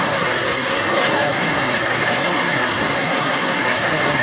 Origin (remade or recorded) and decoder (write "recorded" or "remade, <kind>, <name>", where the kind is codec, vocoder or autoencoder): remade, codec, SNAC